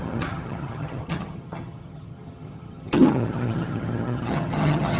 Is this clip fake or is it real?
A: fake